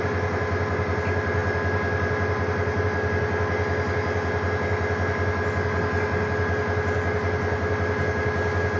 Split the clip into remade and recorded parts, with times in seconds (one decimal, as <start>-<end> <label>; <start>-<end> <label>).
0.0-8.8 recorded

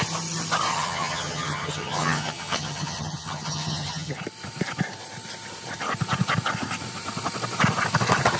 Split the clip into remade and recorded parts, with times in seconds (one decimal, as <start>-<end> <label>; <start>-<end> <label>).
0.0-0.7 recorded; 0.7-4.2 remade; 4.2-8.4 recorded

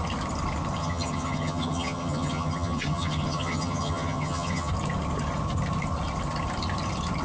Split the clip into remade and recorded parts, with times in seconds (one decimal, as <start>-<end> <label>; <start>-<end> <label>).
0.0-0.8 recorded; 0.8-4.7 remade; 4.7-7.2 recorded